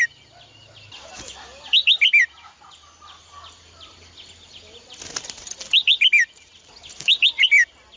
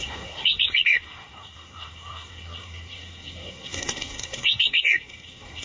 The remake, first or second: second